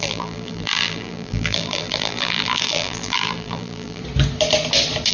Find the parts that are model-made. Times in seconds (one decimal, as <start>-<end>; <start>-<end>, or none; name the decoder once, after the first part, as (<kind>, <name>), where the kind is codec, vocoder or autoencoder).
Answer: 0.0-4.0 (vocoder, BigVGAN v2)

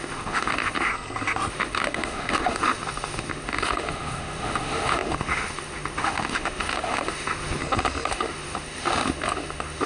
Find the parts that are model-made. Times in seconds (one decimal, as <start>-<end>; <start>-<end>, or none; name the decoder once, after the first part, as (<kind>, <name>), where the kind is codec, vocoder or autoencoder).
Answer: 0.0-0.9 (autoencoder, DAC-VAE); 1.5-7.6; 8.1-9.9

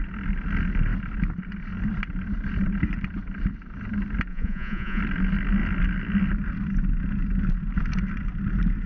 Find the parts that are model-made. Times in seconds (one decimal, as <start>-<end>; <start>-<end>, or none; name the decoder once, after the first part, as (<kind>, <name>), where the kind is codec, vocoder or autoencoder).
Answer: 4.3-5.0 (vocoder, Vocos)

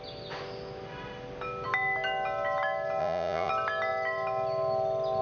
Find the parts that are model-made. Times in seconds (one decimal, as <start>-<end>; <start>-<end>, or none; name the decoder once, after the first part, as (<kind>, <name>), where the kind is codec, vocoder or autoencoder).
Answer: 3.0-3.5 (vocoder, Vocos)

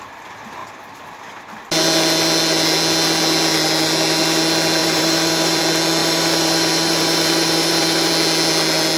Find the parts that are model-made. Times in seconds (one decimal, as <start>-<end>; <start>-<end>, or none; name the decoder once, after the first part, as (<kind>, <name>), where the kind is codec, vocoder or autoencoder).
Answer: 4.8-5.6 (vocoder, BigVGAN v2); 6.0-8.1

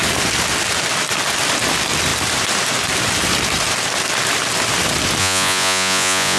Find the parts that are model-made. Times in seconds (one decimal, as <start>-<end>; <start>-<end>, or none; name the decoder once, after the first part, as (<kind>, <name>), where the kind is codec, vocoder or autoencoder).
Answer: 5.2-6.4 (vocoder, Vocos)

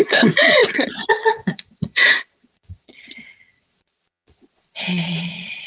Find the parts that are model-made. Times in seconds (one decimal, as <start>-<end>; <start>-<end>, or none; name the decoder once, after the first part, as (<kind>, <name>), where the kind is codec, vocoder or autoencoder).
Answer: 0.0-5.7 (vocoder, Vocos)

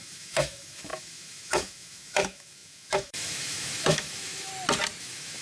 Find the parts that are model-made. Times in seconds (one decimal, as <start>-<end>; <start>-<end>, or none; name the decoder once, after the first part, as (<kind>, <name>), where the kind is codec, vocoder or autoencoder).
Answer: 0.0-4.5 (autoencoder, DAC-VAE); 5.0-5.4